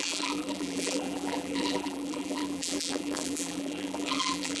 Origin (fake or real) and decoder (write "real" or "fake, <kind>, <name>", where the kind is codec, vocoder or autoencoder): fake, vocoder, BigVGAN v2